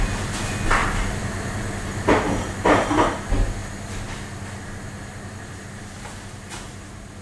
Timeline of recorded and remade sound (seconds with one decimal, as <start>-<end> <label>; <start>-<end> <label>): 0.0-0.8 recorded; 0.8-2.9 remade; 2.9-7.2 recorded